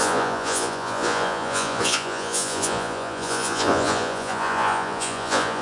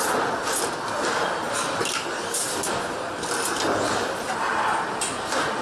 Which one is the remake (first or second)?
first